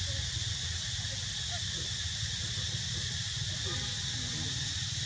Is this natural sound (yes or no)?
yes